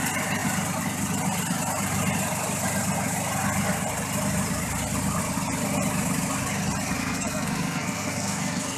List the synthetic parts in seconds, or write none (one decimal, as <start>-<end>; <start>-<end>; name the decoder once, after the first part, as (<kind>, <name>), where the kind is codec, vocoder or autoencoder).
7.0-8.8 (codec, SNAC)